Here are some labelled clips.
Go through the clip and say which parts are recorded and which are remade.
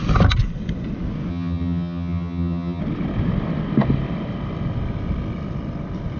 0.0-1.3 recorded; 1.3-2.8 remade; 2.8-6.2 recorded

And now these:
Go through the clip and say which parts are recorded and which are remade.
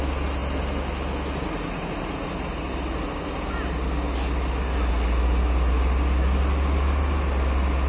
0.0-7.9 recorded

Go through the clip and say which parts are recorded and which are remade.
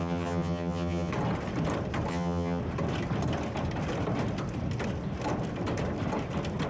0.0-1.1 remade; 1.1-2.1 recorded; 2.1-2.6 remade; 2.6-6.7 recorded